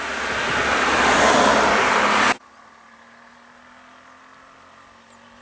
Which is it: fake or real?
real